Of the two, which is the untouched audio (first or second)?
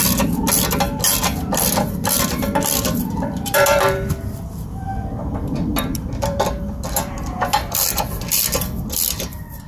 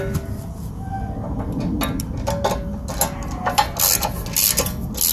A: second